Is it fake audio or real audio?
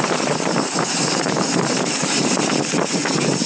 fake